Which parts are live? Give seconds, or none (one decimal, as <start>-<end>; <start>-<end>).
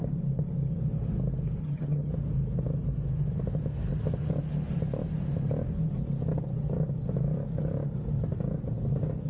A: 0.0-1.6; 2.1-9.3